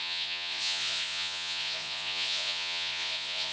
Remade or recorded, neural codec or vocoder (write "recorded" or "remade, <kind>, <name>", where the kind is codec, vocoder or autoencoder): remade, vocoder, Vocos